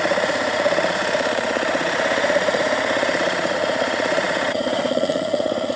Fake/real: fake